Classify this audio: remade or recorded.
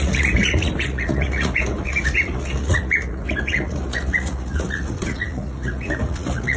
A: remade